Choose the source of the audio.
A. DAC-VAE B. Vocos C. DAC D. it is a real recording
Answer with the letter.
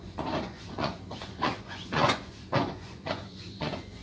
B